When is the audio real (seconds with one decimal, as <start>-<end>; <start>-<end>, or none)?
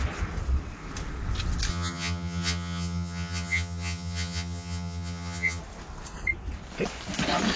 0.0-1.7; 5.6-7.6